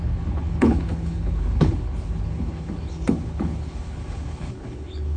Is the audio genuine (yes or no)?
no